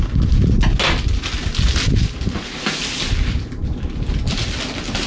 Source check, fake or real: real